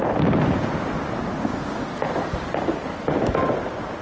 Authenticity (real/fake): real